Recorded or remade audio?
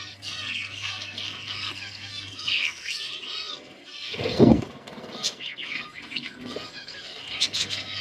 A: remade